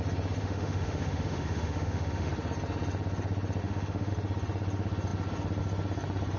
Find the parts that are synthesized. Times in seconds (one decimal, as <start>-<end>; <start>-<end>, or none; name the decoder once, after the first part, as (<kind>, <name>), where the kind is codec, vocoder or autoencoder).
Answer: 0.4-2.3 (autoencoder, DAC-VAE); 3.6-4.1